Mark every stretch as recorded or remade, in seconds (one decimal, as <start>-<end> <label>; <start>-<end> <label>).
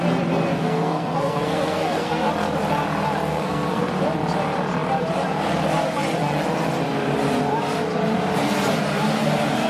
0.0-0.5 recorded; 0.5-2.3 remade; 2.3-3.3 recorded; 3.3-3.9 remade; 3.9-9.7 recorded